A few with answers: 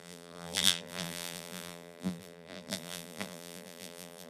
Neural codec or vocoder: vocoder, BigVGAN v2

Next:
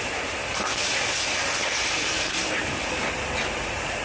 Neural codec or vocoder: vocoder, BigVGAN v2